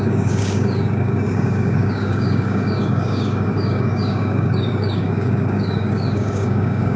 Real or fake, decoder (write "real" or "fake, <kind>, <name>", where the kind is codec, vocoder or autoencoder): fake, codec, DAC